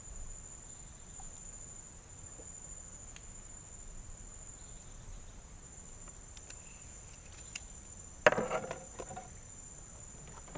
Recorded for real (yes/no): yes